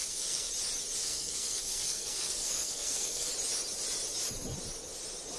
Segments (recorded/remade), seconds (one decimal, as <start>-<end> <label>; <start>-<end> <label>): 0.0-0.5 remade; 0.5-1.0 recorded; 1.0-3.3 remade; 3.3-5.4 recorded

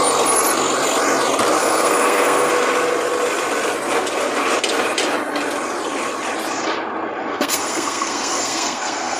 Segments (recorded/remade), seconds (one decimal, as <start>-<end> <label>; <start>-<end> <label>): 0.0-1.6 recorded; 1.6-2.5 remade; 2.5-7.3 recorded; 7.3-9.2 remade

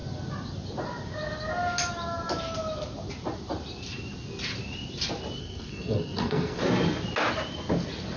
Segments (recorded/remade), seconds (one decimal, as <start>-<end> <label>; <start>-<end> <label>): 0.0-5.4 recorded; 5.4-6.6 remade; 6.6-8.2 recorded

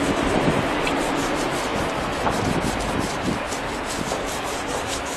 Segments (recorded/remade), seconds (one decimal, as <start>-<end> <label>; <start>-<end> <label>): 0.0-5.2 recorded

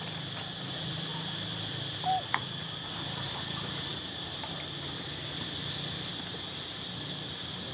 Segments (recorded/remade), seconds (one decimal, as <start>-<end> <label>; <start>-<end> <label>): 0.0-7.7 recorded

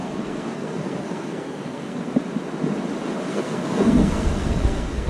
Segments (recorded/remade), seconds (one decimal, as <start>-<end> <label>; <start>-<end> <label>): 0.0-2.1 remade; 2.1-3.3 recorded; 3.3-5.1 remade

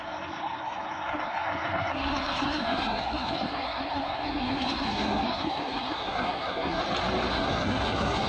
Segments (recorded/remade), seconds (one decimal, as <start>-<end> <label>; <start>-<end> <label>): 0.0-6.8 remade; 6.8-7.3 recorded; 7.3-8.3 remade